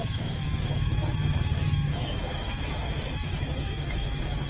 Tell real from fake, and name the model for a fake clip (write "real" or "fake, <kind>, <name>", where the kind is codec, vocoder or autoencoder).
fake, autoencoder, DAC-VAE